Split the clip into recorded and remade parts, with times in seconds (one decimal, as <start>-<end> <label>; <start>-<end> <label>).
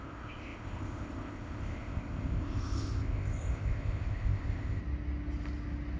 0.0-4.8 remade; 4.8-6.0 recorded